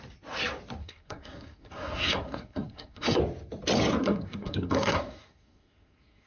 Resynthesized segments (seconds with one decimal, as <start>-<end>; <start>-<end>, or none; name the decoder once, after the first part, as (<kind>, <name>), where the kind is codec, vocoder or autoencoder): 0.8-3.2 (codec, SNAC); 4.0-6.3